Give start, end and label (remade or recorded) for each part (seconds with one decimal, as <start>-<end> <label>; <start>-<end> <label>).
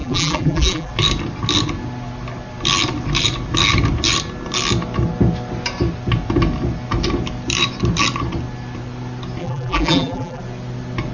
0.0-0.9 remade; 0.9-9.4 recorded; 9.4-10.4 remade; 10.4-11.1 recorded